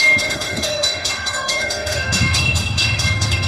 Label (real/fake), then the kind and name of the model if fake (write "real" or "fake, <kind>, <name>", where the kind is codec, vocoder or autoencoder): fake, autoencoder, DAC-VAE